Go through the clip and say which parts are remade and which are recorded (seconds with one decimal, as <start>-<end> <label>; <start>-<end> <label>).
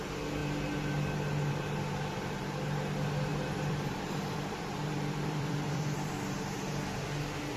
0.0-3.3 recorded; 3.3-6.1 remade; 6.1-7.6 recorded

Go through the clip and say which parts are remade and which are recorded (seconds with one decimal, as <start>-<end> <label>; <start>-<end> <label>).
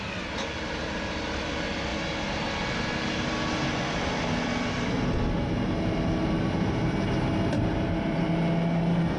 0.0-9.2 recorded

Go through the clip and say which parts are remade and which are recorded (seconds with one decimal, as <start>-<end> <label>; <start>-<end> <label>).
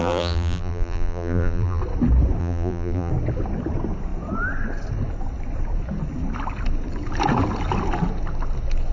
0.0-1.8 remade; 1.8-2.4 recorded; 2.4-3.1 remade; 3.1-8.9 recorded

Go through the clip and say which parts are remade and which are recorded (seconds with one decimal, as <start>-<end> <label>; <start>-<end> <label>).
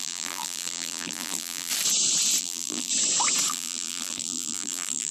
0.0-1.7 remade; 1.7-2.4 recorded; 2.4-2.9 remade; 2.9-3.5 recorded; 3.5-5.1 remade